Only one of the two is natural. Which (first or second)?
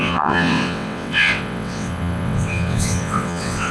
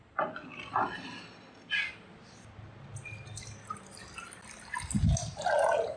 second